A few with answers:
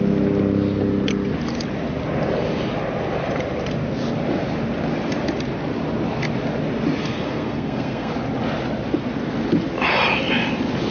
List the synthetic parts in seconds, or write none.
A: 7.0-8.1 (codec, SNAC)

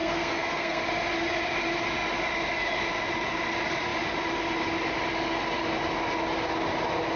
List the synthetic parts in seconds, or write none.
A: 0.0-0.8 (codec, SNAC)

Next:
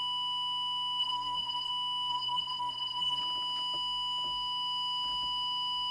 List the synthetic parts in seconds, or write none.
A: 1.0-1.7 (codec, SNAC); 2.1-3.2